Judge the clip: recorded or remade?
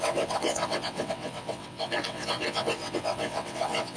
remade